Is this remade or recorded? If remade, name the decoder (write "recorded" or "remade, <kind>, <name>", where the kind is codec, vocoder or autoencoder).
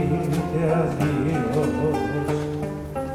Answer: recorded